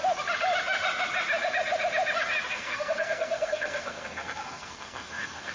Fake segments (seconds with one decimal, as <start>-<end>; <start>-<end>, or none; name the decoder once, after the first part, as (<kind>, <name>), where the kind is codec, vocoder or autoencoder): 2.5-5.5 (codec, SNAC)